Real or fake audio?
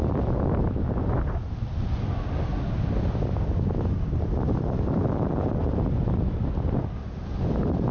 real